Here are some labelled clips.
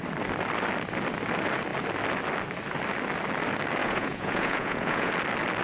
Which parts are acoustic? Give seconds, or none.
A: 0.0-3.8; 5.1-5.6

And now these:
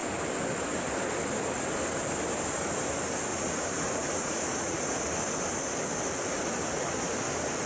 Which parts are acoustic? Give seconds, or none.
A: 0.0-3.3; 5.0-7.7

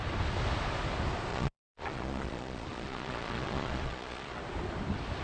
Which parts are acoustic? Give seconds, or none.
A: 0.0-1.3; 4.4-5.2

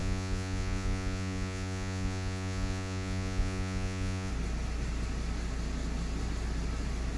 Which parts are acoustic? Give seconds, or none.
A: 4.3-7.2

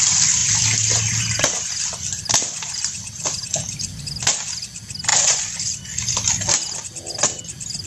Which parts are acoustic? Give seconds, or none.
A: 0.0-5.1; 5.6-7.9

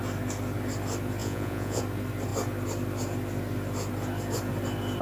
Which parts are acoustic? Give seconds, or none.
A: 0.0-1.2; 1.8-5.0

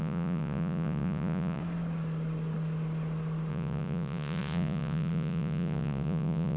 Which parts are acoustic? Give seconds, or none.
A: 1.6-3.5